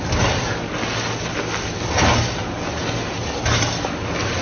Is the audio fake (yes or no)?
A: no